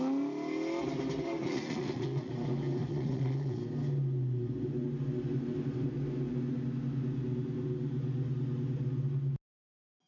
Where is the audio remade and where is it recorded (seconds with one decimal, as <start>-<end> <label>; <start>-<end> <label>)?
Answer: 0.0-1.4 recorded; 1.4-2.3 remade; 2.3-2.8 recorded; 2.8-3.6 remade; 3.6-10.1 recorded

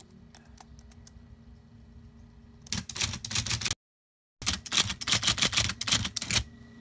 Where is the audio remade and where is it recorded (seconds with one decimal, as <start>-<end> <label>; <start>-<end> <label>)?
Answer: 0.0-6.8 recorded

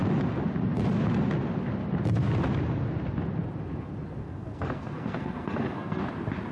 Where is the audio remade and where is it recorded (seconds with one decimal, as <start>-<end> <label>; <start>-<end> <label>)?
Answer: 0.0-4.2 recorded; 4.2-6.0 remade; 6.0-6.5 recorded